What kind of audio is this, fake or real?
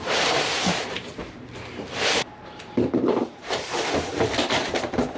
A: fake